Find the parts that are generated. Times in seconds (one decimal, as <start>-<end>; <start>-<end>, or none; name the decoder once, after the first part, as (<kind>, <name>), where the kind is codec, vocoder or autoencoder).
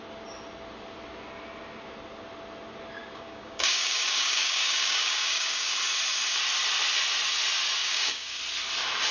3.0-5.8 (codec, DAC); 7.8-8.4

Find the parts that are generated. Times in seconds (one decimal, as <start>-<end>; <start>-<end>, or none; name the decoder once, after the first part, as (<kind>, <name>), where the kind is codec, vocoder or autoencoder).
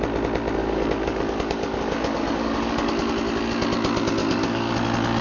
0.6-3.1 (codec, DAC); 4.2-4.7